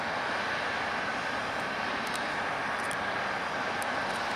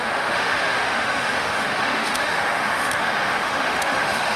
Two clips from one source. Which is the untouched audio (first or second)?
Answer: first